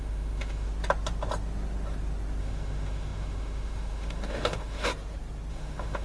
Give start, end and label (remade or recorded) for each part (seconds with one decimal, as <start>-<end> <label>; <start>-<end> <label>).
0.0-0.7 remade; 0.7-2.4 recorded; 2.4-4.9 remade; 4.9-5.5 recorded; 5.5-6.0 remade